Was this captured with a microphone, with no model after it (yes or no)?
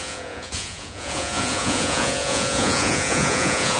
no